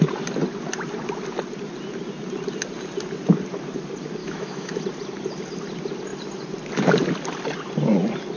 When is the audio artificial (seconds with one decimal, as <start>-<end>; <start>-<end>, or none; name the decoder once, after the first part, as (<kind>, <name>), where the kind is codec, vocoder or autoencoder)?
4.2-4.8 (autoencoder, DAC-VAE)